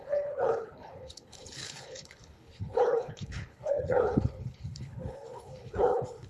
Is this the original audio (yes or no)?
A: no